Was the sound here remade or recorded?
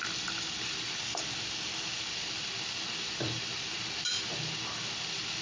remade